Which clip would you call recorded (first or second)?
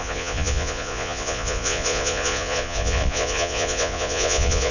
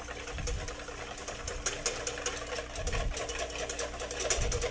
second